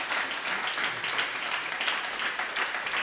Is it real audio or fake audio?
real